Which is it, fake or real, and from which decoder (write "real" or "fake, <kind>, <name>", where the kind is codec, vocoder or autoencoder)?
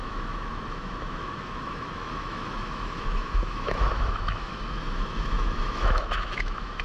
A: fake, autoencoder, DAC-VAE